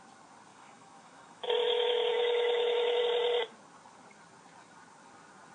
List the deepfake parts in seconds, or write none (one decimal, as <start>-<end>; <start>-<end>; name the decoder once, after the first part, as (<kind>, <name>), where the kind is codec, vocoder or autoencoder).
0.5-3.0 (autoencoder, DAC-VAE)